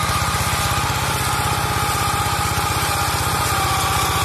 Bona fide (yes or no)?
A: yes